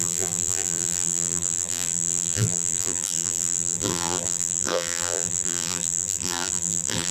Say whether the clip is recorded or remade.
remade